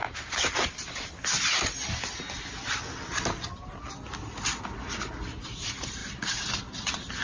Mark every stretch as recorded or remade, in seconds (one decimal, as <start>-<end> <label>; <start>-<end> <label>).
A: 0.0-7.2 recorded